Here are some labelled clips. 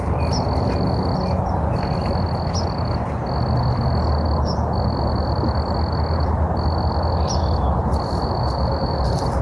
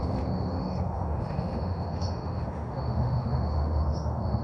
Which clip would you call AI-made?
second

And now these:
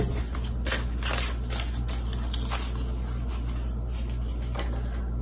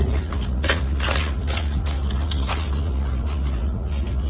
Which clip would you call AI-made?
second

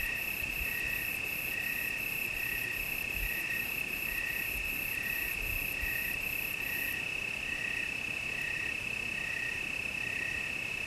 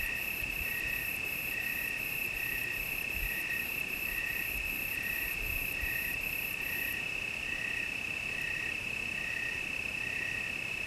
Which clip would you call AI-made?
second